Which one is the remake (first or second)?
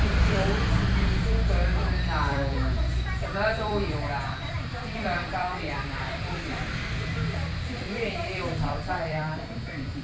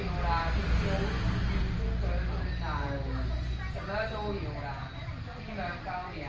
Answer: first